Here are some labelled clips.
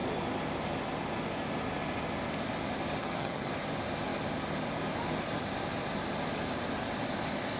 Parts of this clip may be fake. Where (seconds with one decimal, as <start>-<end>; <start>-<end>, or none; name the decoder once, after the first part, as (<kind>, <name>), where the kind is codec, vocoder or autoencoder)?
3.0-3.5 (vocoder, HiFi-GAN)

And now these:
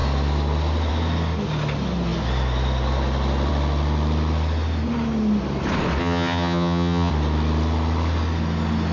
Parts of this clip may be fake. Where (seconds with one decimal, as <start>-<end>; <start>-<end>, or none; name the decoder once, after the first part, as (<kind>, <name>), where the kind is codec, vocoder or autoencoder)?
6.0-7.1 (vocoder, HiFi-GAN)

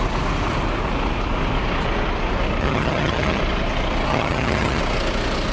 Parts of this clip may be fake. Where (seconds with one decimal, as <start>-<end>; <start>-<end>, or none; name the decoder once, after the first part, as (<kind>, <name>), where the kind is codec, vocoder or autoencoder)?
2.6-3.4 (vocoder, HiFi-GAN); 4.1-4.8

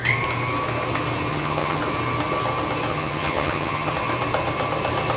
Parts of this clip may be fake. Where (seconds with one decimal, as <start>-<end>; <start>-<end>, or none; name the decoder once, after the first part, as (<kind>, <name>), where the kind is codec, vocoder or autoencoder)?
1.3-1.8 (vocoder, HiFi-GAN); 2.9-3.9